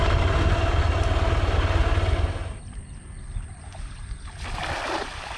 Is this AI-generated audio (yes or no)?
no